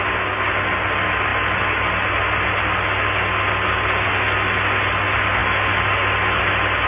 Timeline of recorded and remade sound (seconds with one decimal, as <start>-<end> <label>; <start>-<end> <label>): 0.0-6.9 recorded